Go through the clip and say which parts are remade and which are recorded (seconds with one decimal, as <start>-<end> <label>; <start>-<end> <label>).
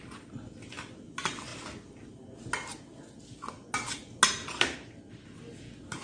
0.0-6.0 recorded